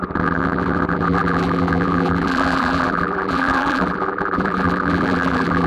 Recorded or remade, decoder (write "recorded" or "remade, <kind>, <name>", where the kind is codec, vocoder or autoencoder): remade, vocoder, BigVGAN v2